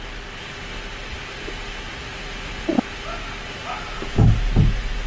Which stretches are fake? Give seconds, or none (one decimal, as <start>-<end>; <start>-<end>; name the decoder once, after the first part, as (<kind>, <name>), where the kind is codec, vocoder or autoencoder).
none